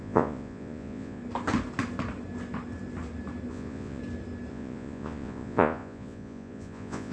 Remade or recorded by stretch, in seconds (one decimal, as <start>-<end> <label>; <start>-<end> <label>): 0.0-1.2 remade; 1.2-3.5 recorded; 3.5-4.0 remade; 4.0-4.5 recorded; 4.5-7.1 remade